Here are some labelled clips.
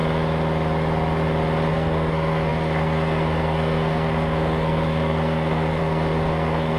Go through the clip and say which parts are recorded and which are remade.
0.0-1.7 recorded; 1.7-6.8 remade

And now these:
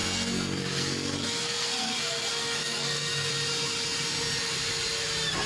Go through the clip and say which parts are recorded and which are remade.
0.0-3.3 remade; 3.3-5.5 recorded

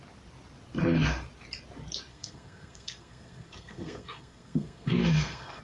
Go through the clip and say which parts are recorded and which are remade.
0.0-2.1 recorded; 2.1-5.6 remade

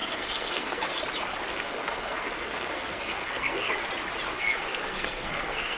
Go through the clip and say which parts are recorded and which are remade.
0.0-1.0 remade; 1.0-1.5 recorded; 1.5-3.7 remade; 3.7-4.3 recorded; 4.3-5.8 remade